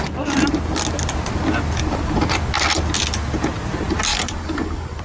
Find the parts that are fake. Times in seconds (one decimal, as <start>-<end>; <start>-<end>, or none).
4.1-5.0